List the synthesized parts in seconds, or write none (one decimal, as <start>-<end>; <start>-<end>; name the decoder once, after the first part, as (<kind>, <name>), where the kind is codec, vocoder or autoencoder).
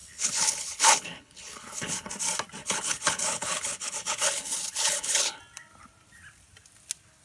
0.0-2.1 (codec, HILCodec); 2.6-5.4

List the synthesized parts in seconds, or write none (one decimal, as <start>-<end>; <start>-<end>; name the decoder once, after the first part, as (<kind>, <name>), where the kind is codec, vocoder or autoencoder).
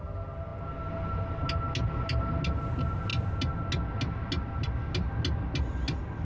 none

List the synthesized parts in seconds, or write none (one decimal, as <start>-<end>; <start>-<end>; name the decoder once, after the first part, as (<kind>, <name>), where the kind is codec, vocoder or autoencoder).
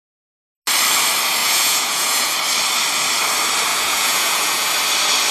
1.4-2.3 (vocoder, Vocos); 3.7-4.7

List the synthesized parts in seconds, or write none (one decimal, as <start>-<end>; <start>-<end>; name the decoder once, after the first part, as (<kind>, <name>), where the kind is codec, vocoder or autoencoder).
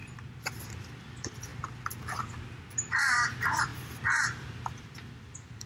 0.7-1.5 (vocoder, BigVGAN v2); 3.3-3.7; 4.5-5.7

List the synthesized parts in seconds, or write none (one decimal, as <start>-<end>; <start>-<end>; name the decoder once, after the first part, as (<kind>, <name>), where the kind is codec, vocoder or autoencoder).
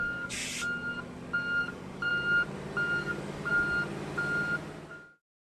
0.0-0.4 (codec, DAC); 1.6-2.1; 3.0-3.5; 4.9-5.6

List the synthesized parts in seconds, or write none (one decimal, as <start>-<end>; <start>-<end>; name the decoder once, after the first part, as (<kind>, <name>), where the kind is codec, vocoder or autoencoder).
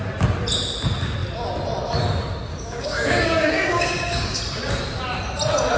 2.5-4.4 (codec, DAC)